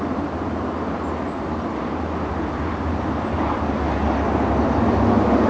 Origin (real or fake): real